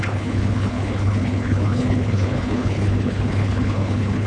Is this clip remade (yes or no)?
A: yes